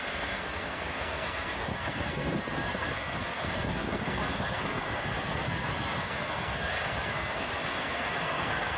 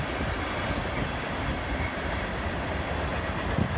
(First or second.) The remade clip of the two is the first